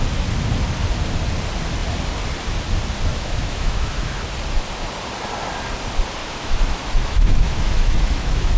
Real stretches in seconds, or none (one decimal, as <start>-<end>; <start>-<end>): 0.0-3.1; 4.2-6.2